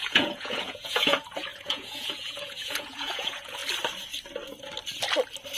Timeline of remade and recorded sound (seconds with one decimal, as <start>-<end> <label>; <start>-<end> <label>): 0.0-3.6 remade; 3.6-5.6 recorded